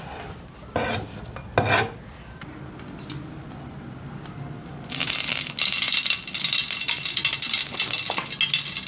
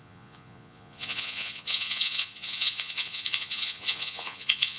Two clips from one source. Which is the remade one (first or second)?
second